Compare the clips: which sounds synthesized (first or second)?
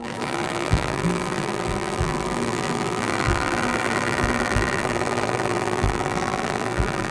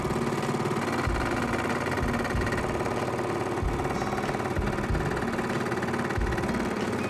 first